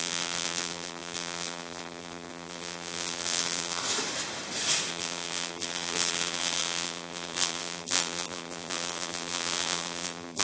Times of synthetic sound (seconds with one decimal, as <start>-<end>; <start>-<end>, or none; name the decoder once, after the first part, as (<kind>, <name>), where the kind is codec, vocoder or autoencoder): 0.0-3.8 (vocoder, BigVGAN v2); 4.9-10.4